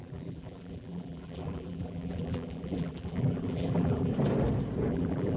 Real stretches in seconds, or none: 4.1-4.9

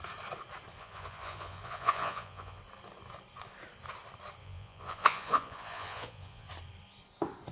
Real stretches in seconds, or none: 0.0-0.8; 2.6-4.4; 6.5-7.5

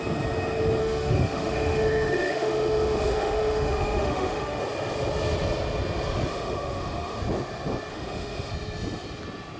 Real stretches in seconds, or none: 0.0-0.8; 4.6-6.3; 7.2-7.9; 8.5-9.6

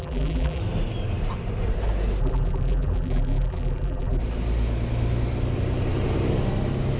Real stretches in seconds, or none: 0.6-2.2; 4.2-7.0

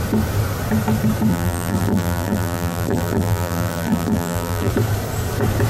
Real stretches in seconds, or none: 0.0-1.3; 4.7-5.7

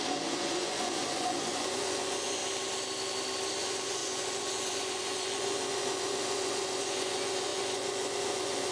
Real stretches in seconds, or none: 2.4-3.6